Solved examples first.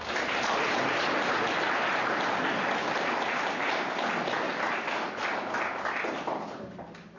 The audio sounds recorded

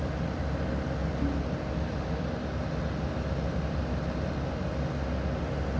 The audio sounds recorded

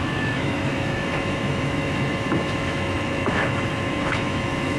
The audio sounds remade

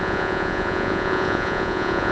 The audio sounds remade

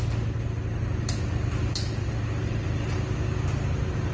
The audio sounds recorded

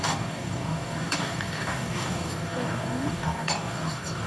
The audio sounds remade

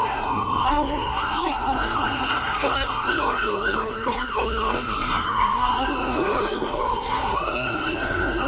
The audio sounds remade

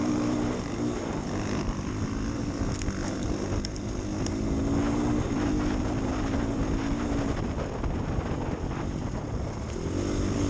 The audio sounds recorded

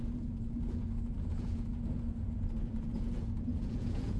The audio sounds remade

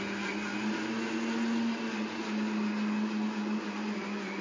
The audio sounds recorded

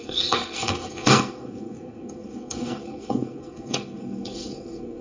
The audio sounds remade